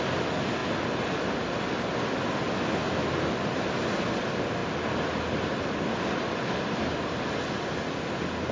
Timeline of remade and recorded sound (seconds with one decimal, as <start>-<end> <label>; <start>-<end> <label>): 0.0-8.5 recorded